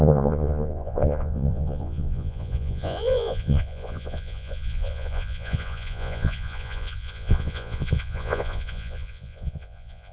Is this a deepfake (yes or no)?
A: yes